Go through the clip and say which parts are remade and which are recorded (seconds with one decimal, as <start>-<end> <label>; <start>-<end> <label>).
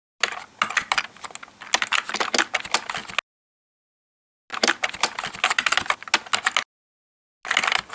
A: 0.0-4.5 recorded; 4.5-5.3 remade; 5.3-7.9 recorded